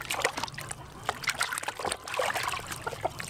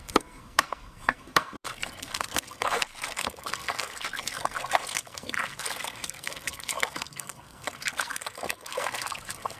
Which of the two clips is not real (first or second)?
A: second